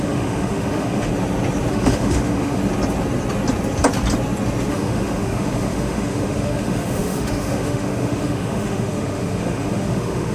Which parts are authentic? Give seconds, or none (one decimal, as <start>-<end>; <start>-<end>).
1.1-1.7; 2.6-4.7

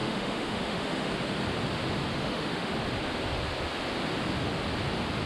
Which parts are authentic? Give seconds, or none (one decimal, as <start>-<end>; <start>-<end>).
1.1-2.1; 2.7-5.3